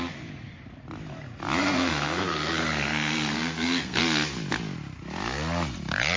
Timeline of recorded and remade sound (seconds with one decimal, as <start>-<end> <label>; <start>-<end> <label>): 0.0-1.6 recorded; 1.6-4.0 remade; 4.0-6.2 recorded